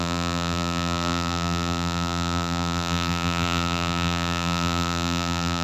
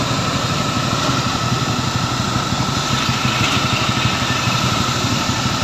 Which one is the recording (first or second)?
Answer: second